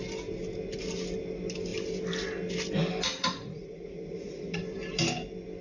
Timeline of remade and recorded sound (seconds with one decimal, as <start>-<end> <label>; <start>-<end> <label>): 0.0-3.2 recorded; 3.2-4.6 remade; 4.6-5.6 recorded